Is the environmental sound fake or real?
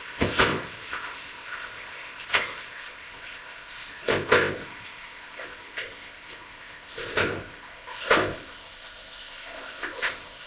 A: fake